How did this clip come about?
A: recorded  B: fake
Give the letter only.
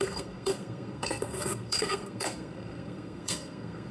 B